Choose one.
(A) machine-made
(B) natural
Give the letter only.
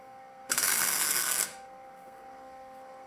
A